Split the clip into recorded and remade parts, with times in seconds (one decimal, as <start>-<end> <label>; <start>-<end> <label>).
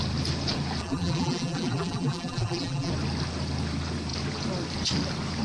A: 0.0-0.8 recorded; 0.8-2.9 remade; 2.9-5.4 recorded